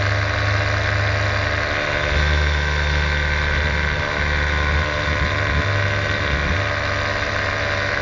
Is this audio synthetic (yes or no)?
no